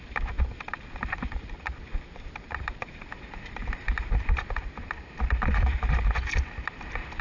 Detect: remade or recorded remade